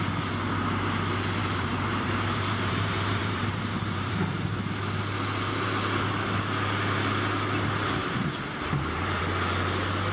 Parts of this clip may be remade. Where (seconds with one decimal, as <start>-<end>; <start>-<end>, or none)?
1.4-4.3; 8.0-9.2